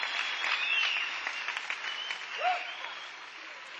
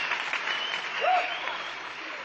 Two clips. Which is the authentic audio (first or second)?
first